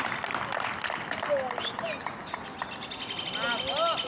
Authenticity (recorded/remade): recorded